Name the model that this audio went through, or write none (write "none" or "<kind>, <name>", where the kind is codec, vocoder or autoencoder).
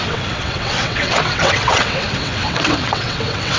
vocoder, WaveNeXt